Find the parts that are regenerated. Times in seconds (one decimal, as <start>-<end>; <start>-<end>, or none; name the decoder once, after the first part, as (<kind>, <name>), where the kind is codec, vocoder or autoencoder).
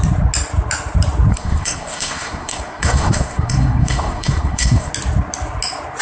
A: 1.3-4.9 (codec, SNAC)